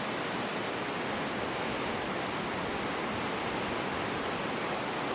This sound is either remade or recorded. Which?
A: recorded